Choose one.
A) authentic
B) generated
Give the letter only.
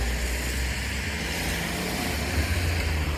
A